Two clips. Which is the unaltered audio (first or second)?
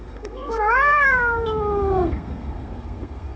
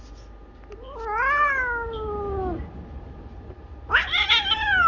second